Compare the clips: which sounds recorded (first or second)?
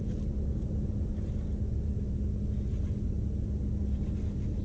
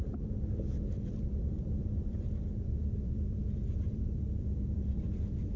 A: first